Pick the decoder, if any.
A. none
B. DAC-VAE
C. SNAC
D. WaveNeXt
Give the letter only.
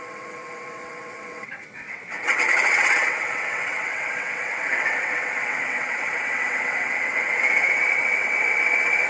D